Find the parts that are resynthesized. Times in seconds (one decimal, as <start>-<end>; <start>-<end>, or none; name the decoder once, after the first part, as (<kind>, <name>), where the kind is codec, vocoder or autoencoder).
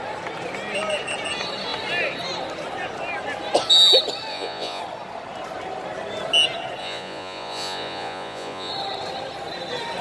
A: 4.3-4.8 (vocoder, Vocos); 6.8-8.7